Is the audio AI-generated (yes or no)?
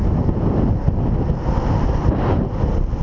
no